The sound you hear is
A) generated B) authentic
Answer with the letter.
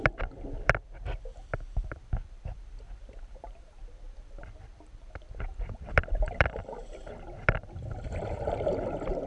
A